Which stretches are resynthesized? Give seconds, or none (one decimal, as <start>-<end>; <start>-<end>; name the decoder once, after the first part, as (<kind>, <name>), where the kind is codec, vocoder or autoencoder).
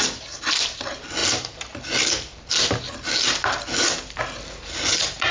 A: none